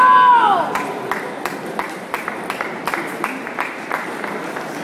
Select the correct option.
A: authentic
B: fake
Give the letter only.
B